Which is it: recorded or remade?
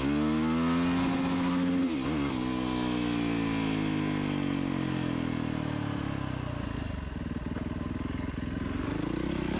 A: recorded